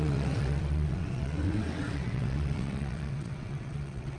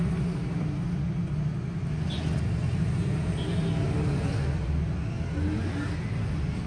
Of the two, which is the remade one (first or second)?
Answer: first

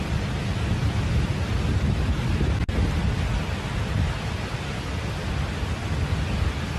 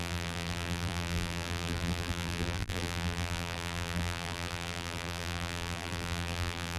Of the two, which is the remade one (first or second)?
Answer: second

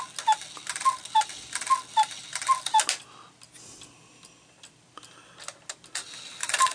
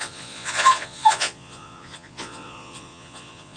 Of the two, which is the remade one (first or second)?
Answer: second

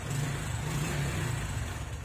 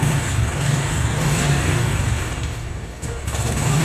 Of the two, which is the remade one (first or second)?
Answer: second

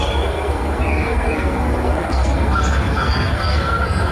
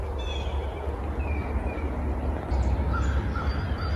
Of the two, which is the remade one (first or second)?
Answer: first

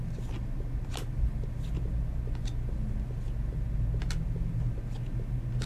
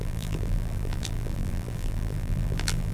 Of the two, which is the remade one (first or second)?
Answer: second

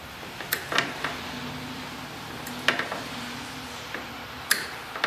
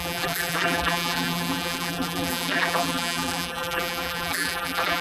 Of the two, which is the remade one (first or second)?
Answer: second